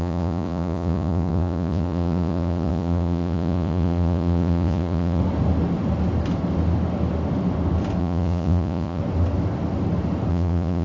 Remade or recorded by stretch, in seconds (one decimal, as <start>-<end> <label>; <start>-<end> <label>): 0.0-5.2 remade; 5.2-8.0 recorded; 8.0-9.0 remade; 9.0-10.3 recorded; 10.3-10.8 remade